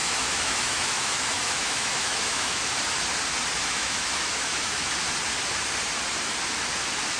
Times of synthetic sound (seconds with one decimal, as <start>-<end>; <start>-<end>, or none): 0.0-2.6; 3.6-4.9